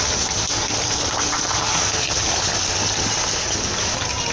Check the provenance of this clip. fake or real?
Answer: real